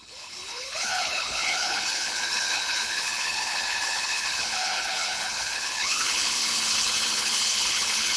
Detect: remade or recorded remade